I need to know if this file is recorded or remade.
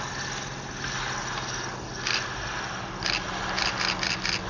recorded